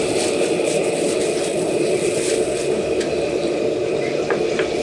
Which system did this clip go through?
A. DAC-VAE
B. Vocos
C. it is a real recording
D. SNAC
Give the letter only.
C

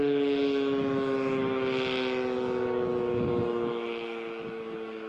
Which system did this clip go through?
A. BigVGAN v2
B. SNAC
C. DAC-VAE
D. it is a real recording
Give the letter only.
C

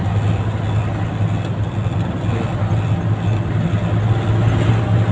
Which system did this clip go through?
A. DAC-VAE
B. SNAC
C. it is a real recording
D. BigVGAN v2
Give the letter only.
C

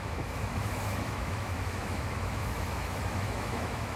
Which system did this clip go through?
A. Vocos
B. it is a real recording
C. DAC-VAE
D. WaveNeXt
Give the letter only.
C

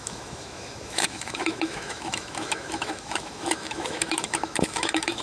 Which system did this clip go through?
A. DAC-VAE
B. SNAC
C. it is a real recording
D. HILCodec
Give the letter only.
A